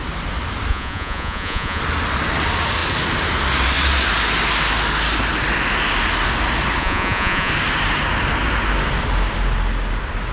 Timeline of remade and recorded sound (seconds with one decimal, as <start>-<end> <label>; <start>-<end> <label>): 0.0-0.7 recorded; 0.7-1.8 remade; 1.8-6.8 recorded; 6.8-7.5 remade; 7.5-10.3 recorded